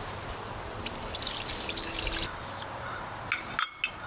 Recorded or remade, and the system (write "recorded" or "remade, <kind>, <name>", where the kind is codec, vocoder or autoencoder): recorded